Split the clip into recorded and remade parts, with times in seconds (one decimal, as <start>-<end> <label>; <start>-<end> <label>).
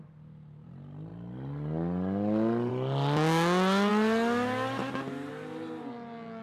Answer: 0.0-6.4 recorded